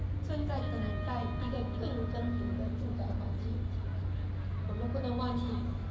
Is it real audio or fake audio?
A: real